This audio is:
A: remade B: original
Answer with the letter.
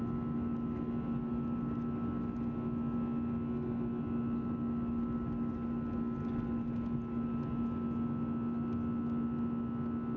B